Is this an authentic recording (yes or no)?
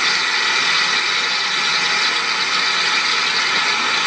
yes